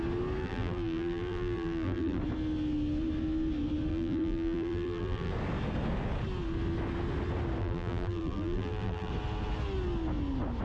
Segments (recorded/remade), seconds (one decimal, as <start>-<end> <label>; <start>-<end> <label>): 0.0-0.4 recorded; 0.4-2.2 remade; 2.2-3.9 recorded; 3.9-5.3 remade; 5.3-7.6 recorded; 7.6-9.1 remade; 9.1-10.6 recorded